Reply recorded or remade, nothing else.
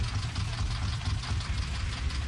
recorded